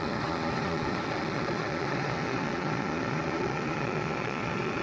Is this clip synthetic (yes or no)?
yes